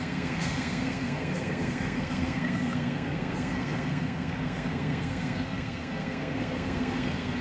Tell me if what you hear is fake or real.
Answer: fake